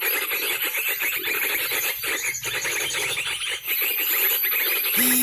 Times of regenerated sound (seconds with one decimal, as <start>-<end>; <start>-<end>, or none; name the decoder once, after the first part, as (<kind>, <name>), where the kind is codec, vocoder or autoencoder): 0.6-2.1 (vocoder, BigVGAN v2)